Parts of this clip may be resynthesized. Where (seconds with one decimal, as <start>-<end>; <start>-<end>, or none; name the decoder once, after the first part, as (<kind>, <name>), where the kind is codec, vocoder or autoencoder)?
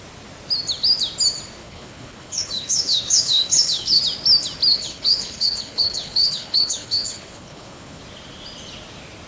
1.6-4.0 (codec, HILCodec); 4.7-8.0